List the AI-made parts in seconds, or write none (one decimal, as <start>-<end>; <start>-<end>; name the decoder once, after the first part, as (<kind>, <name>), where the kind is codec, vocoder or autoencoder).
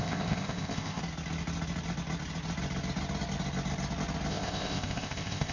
0.0-1.0 (codec, ZipCodec); 4.3-5.5